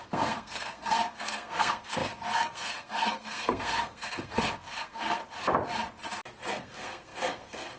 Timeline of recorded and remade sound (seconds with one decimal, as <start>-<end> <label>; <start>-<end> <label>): 0.0-5.2 remade; 5.2-6.5 recorded; 6.5-7.8 remade